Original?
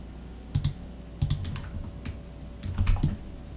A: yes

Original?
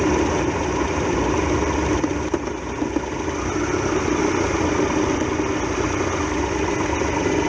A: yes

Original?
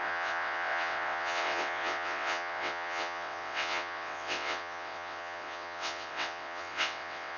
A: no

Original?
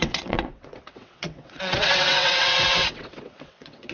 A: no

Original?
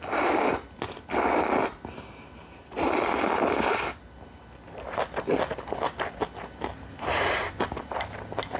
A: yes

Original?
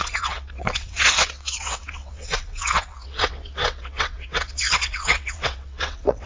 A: no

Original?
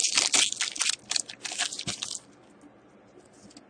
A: yes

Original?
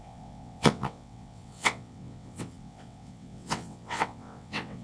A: no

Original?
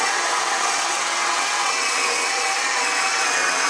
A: no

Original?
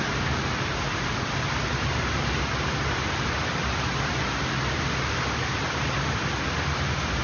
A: yes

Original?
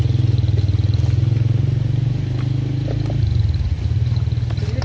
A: yes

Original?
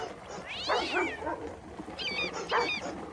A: yes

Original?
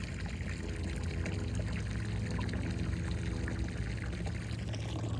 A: yes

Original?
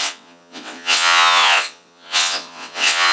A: no